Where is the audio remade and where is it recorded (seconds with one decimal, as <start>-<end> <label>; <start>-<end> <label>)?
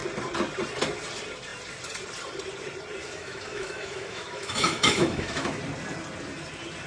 0.0-3.0 recorded; 3.0-5.6 remade; 5.6-6.9 recorded